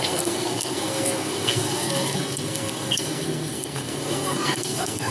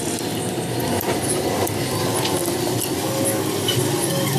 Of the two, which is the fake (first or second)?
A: first